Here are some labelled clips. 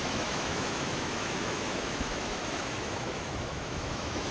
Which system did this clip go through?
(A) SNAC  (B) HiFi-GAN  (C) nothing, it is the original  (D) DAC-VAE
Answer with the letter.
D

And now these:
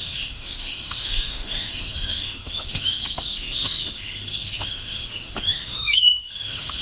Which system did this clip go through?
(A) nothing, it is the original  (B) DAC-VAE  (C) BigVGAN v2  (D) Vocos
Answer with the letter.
B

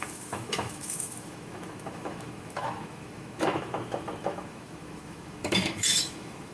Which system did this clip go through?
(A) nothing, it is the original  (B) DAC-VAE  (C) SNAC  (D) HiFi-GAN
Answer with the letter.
B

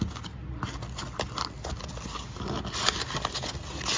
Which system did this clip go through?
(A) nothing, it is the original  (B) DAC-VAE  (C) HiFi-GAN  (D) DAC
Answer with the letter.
A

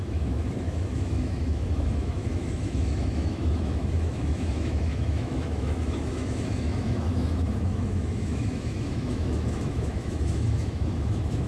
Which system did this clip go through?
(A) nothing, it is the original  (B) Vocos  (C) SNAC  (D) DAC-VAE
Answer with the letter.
D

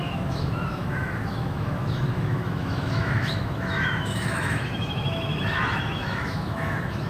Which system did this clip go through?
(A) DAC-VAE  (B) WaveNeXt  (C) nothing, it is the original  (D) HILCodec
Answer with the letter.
A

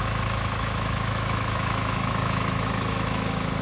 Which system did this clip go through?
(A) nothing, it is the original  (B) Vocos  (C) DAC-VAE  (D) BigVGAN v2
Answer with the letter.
C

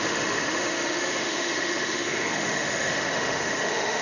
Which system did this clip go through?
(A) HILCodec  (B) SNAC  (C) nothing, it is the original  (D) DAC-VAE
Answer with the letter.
D